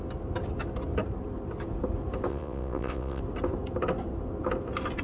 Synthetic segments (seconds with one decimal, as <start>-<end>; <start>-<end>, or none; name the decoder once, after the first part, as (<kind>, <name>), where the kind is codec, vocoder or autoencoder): 2.3-3.2 (vocoder, WaveNeXt)